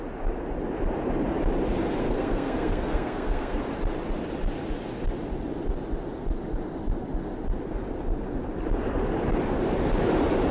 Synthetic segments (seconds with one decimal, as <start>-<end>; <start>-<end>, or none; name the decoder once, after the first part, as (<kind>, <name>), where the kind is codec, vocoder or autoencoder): 2.0-3.6 (codec, SNAC)